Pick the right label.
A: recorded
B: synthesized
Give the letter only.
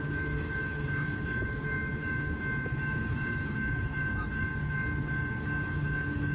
B